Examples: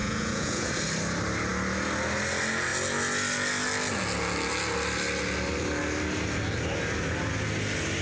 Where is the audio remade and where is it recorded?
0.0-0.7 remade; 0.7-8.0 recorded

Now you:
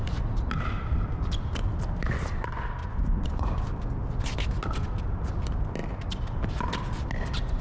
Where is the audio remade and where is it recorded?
0.0-2.8 recorded; 2.8-3.6 remade; 3.6-7.6 recorded

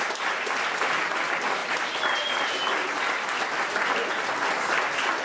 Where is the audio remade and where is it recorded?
0.0-5.2 recorded

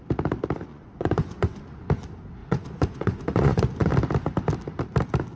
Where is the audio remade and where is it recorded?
0.0-0.7 recorded; 0.7-1.9 remade; 1.9-2.4 recorded; 2.4-3.9 remade; 3.9-5.4 recorded

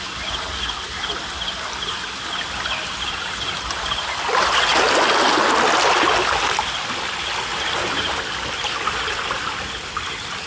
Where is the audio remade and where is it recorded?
0.0-10.5 recorded